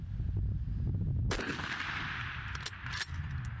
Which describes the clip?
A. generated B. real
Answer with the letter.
B